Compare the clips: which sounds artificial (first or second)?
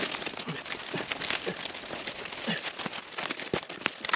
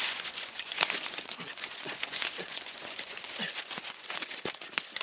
second